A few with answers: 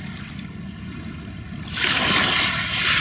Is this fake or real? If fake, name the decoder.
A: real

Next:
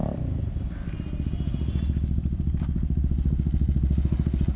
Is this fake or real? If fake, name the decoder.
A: real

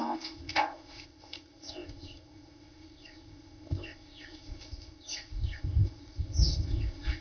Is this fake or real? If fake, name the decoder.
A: fake, codec, ZipCodec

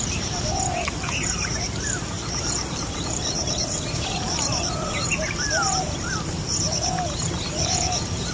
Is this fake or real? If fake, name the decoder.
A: fake, vocoder, BigVGAN v2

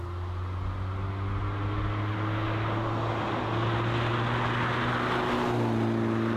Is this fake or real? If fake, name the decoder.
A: real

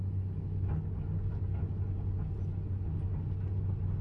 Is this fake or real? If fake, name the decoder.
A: real